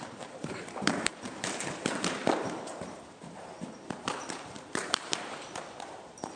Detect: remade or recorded remade